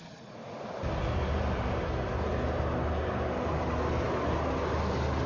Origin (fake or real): real